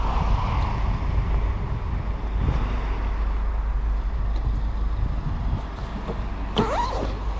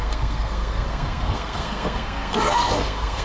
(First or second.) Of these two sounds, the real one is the first